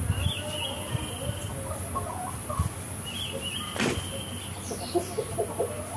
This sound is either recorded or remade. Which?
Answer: recorded